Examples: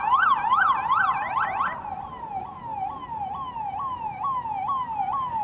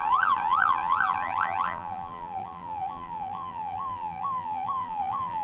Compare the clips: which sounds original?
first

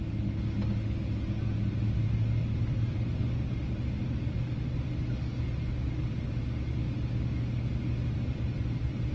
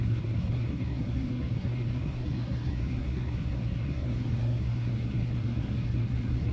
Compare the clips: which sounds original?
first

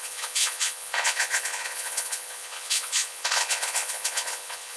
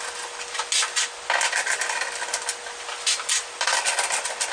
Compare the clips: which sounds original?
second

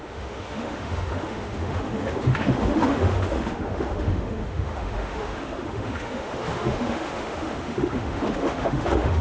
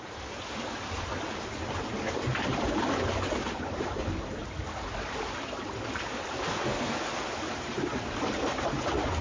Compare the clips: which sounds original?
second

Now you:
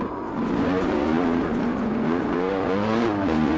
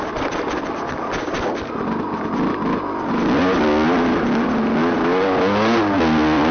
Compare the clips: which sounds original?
second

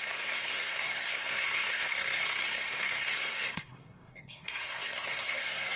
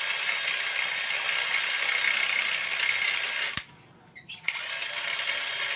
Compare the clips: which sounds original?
second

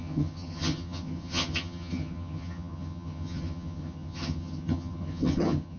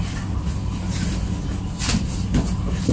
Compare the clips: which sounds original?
second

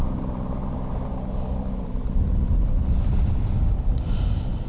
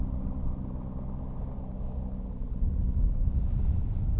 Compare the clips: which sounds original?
second